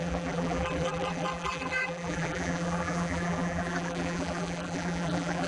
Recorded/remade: remade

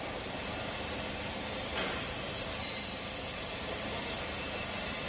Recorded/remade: remade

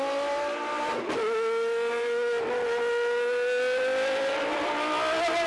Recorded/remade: recorded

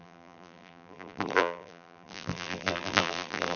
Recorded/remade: remade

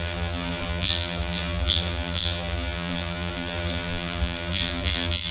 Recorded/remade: remade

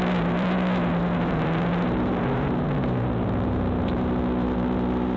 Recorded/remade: remade